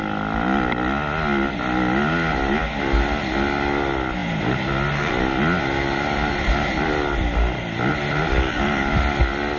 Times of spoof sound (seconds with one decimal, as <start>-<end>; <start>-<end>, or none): none